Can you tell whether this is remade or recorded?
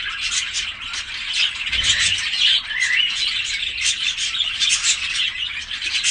recorded